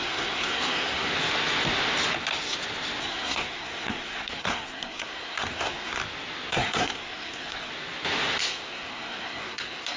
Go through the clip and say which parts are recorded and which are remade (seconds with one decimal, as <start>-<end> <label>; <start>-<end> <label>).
0.0-1.1 remade; 1.1-3.0 recorded; 3.0-6.0 remade; 6.0-6.5 recorded; 6.5-7.7 remade; 7.7-8.4 recorded; 8.4-10.0 remade